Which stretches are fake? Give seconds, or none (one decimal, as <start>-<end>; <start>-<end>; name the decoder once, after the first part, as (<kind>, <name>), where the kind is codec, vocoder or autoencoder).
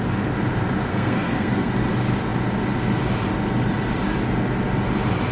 0.9-1.7 (codec, SNAC)